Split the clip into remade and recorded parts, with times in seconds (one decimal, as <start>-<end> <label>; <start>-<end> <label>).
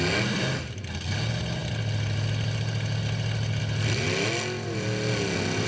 0.0-5.7 recorded